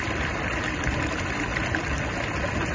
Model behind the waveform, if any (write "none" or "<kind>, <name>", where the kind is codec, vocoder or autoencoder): vocoder, BigVGAN v2